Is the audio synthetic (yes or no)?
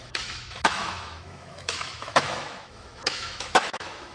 yes